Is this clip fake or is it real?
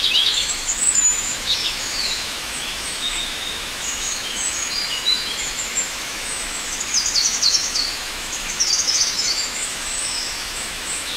fake